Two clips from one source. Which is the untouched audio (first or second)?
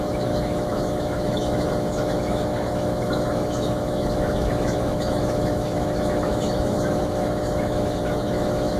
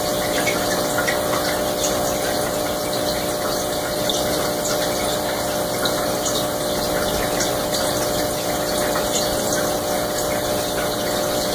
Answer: second